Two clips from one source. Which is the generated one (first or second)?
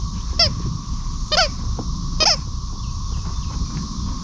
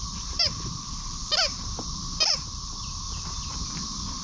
second